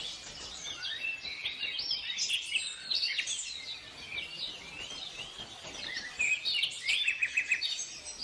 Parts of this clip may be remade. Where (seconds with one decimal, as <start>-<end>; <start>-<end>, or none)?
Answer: 3.9-4.6; 6.9-7.6